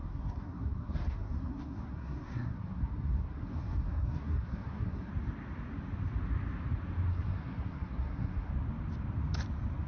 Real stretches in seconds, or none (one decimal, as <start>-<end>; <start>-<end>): 5.1-7.1; 8.5-9.9